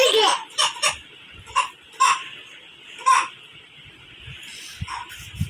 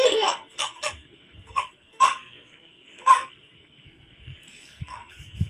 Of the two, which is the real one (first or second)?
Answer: first